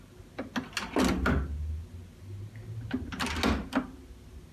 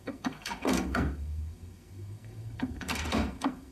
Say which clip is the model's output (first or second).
second